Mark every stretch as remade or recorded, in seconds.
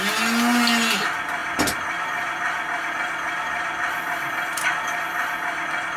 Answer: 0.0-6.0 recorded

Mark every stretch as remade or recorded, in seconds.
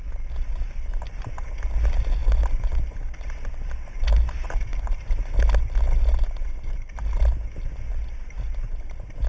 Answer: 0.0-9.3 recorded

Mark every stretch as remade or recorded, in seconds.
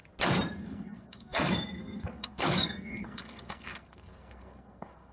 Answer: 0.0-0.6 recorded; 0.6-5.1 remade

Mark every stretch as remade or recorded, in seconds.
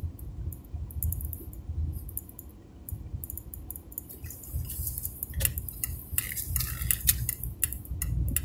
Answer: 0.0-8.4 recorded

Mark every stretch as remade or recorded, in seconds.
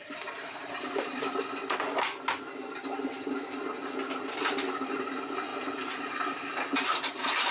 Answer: 0.0-7.5 recorded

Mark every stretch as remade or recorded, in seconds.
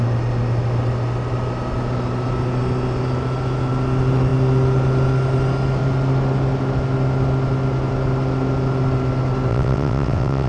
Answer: 0.0-9.5 recorded; 9.5-10.5 remade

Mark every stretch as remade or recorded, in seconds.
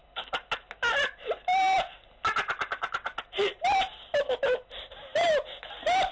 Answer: 0.0-6.1 recorded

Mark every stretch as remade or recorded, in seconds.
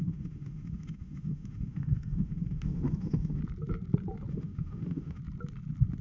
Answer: 0.0-3.4 remade; 3.4-4.3 recorded; 4.3-5.2 remade; 5.2-6.0 recorded